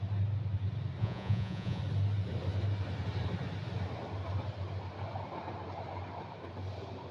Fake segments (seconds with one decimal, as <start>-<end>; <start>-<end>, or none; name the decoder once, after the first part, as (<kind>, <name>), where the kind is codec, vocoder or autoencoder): 1.0-1.8 (vocoder, Vocos)